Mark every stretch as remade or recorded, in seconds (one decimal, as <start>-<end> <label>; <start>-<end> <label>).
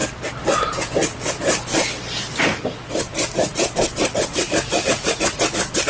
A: 0.0-4.3 recorded; 4.3-5.4 remade; 5.4-5.9 recorded